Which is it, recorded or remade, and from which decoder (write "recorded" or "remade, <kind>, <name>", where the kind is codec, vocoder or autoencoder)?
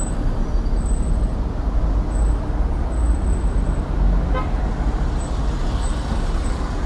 recorded